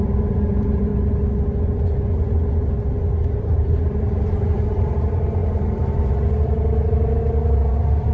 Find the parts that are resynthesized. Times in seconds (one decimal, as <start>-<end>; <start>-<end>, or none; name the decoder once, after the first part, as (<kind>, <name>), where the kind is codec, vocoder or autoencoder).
0.0-0.9 (vocoder, BigVGAN v2); 3.4-8.1